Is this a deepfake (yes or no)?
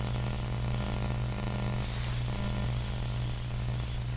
no